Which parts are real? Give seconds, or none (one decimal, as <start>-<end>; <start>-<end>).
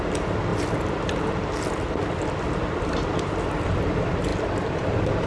0.0-5.3